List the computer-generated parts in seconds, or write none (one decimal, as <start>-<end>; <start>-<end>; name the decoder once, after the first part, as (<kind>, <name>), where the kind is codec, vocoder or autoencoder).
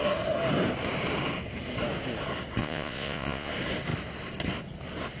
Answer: 2.6-3.5 (vocoder, Vocos)